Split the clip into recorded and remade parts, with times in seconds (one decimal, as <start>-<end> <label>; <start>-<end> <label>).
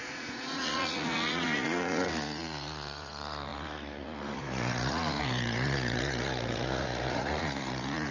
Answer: 0.0-8.1 remade